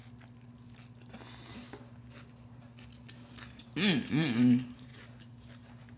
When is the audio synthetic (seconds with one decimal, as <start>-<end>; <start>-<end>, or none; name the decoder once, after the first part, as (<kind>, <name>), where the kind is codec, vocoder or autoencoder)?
3.6-6.0 (vocoder, BigVGAN v2)

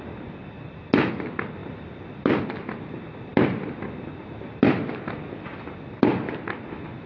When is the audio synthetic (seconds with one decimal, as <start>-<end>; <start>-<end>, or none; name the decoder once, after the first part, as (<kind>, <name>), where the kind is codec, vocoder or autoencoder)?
0.0-5.5 (vocoder, BigVGAN v2); 6.1-7.1

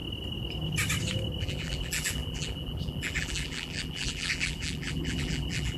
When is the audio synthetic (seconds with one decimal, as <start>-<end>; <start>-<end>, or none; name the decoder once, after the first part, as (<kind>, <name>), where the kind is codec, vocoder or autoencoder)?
1.4-5.8 (vocoder, BigVGAN v2)

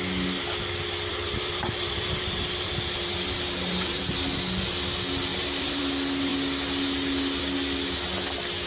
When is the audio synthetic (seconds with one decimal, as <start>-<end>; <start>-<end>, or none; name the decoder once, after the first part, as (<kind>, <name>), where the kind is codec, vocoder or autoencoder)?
1.1-4.0 (vocoder, BigVGAN v2); 5.3-5.8

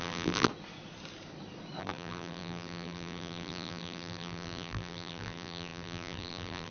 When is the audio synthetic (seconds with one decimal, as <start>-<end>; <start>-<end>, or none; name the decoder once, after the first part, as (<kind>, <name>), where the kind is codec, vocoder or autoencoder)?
0.0-0.5 (vocoder, BigVGAN v2); 1.8-6.7

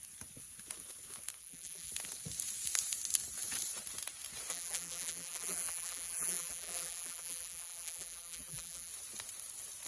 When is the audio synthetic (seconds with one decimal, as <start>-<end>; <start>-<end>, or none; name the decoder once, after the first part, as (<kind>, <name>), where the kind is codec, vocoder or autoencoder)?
1.4-1.9 (vocoder, BigVGAN v2); 4.5-8.9

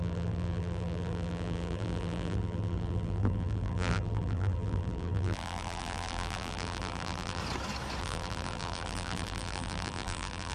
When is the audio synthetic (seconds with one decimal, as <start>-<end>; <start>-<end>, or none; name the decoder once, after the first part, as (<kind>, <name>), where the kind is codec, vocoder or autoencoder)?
0.0-7.4 (vocoder, BigVGAN v2); 8.0-10.5